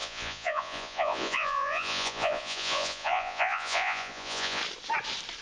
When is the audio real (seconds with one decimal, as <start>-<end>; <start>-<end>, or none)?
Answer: 4.6-5.4